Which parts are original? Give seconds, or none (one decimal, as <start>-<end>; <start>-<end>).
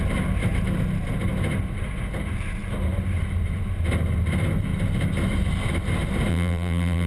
0.0-6.3